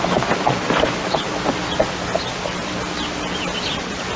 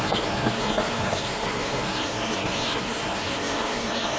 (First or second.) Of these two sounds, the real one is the first